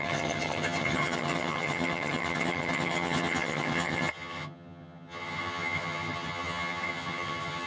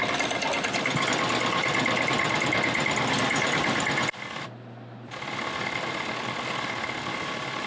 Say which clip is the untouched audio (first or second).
second